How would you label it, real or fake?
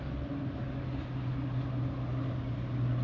real